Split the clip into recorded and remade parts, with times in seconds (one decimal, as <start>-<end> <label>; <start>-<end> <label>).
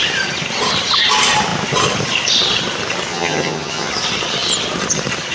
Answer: 0.0-3.1 recorded; 3.1-3.9 remade; 3.9-5.3 recorded